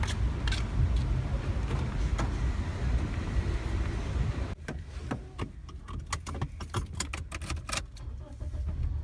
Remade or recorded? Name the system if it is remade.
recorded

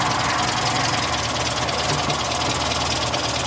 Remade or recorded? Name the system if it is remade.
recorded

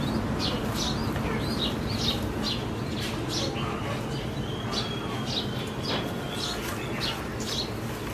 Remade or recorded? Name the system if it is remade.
recorded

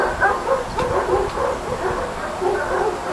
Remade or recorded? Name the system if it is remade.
recorded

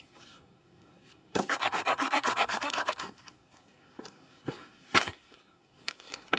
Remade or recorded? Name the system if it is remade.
remade, codec, SNAC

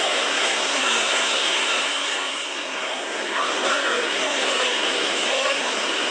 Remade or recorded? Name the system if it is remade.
remade, codec, SNAC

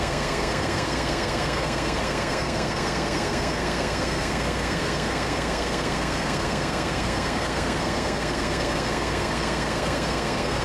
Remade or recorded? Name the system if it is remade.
remade, codec, SNAC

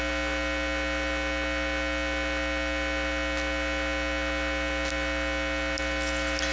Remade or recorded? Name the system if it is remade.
recorded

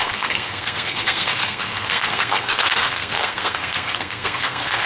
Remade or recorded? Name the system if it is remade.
remade, codec, SNAC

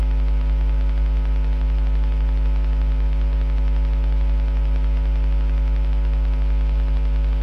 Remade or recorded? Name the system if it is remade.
recorded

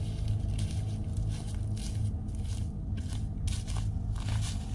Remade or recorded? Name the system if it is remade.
recorded